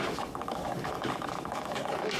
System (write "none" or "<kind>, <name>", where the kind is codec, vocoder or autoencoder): codec, DAC